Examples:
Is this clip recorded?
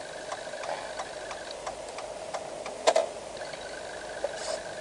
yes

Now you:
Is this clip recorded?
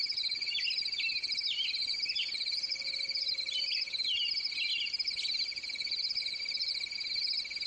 yes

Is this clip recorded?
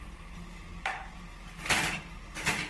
yes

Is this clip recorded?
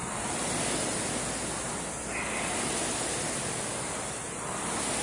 yes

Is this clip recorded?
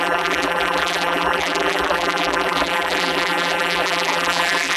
no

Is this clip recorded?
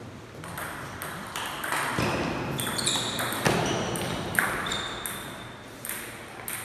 yes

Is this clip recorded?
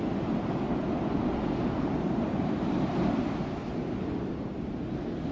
yes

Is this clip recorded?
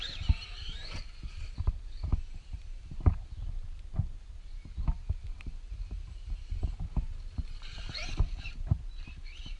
no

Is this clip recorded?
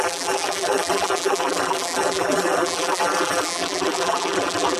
no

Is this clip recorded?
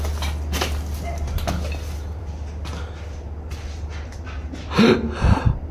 yes